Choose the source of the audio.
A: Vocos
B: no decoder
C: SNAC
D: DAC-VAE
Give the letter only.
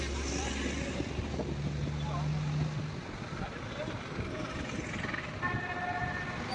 B